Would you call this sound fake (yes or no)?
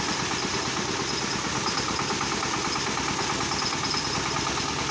no